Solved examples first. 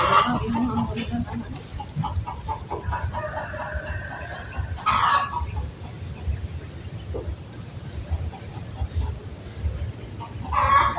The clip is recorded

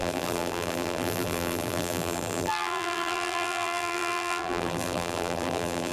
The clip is remade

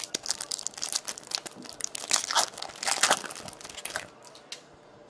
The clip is recorded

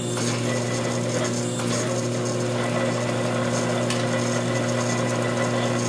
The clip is recorded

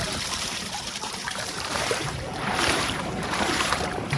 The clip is remade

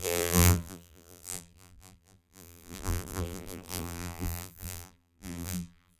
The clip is remade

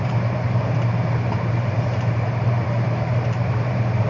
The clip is remade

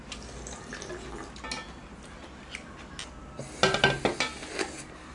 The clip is recorded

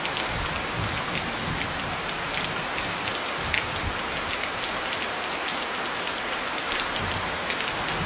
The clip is recorded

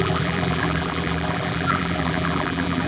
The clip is remade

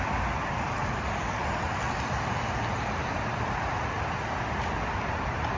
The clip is recorded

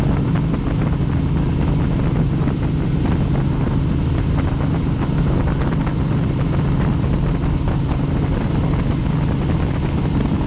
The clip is recorded